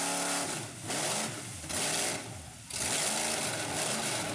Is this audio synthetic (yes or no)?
no